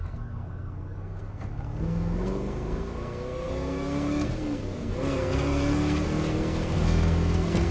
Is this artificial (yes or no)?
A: yes